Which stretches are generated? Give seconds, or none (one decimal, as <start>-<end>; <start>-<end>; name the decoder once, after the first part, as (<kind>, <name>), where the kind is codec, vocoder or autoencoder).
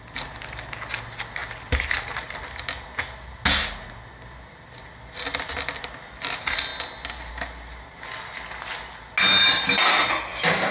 none